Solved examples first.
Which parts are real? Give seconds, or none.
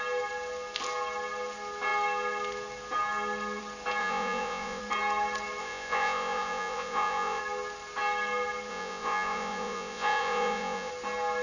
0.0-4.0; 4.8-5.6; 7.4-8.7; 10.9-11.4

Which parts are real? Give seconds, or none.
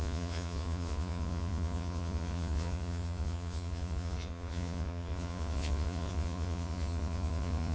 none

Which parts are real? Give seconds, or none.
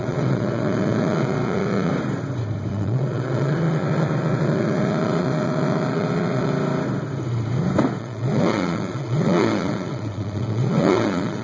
1.9-2.7; 6.5-8.0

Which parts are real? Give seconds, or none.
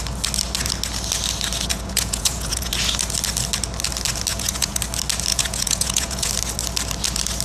0.0-1.7; 2.7-4.3; 4.8-5.3; 6.3-7.4